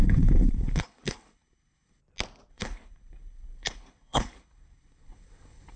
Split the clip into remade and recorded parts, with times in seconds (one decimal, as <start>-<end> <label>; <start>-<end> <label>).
0.0-2.0 remade; 2.0-2.5 recorded; 2.5-5.8 remade